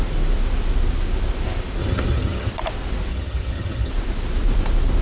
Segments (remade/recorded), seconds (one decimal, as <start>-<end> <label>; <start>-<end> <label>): 0.0-1.8 recorded; 1.8-2.5 remade; 2.5-3.1 recorded; 3.1-3.9 remade; 3.9-5.0 recorded